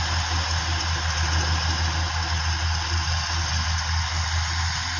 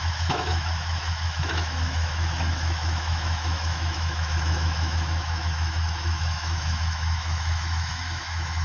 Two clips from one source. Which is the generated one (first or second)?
second